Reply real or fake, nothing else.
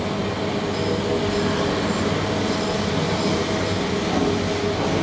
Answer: real